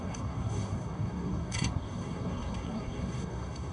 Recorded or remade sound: remade